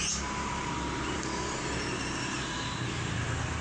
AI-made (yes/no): yes